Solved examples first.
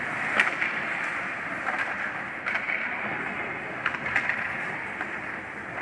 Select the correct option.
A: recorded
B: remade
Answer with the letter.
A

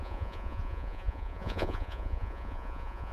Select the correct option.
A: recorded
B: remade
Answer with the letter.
B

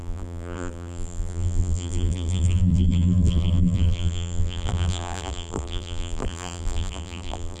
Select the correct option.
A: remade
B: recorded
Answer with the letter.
A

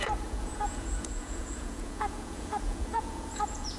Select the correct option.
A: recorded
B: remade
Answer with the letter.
B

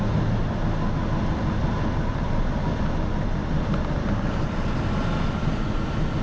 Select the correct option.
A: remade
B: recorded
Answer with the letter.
B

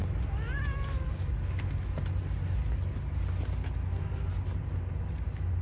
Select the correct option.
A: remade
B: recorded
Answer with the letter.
B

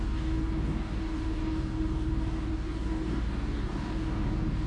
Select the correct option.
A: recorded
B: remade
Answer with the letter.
B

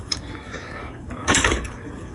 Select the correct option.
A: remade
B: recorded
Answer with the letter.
A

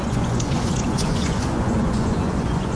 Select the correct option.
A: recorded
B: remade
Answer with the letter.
B